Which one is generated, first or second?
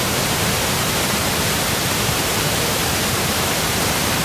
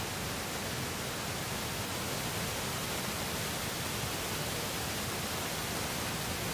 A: first